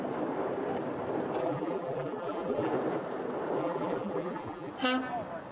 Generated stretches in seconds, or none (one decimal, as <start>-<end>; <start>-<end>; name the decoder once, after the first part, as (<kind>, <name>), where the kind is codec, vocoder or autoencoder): 1.4-2.7 (vocoder, BigVGAN v2); 3.6-4.7